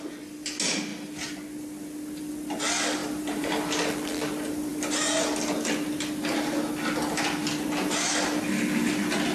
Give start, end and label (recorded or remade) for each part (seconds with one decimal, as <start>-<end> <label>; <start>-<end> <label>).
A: 0.0-3.0 recorded; 3.0-3.5 remade; 3.5-9.3 recorded